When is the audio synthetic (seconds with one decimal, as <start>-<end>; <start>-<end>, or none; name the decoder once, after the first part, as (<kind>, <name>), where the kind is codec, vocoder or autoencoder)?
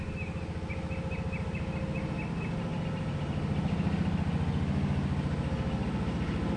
none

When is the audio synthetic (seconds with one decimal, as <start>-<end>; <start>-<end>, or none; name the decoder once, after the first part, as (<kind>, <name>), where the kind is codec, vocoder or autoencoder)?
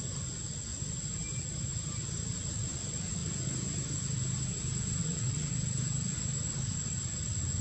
5.0-5.5 (vocoder, WaveNeXt)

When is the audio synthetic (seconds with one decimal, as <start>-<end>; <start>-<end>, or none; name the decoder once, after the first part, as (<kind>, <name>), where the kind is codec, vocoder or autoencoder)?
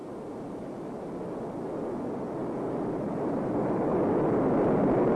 none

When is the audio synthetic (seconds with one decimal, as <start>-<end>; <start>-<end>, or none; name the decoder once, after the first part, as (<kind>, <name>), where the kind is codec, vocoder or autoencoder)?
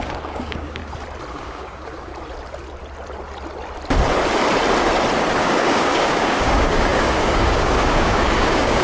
0.0-0.8 (codec, DAC); 1.3-2.1; 5.4-8.8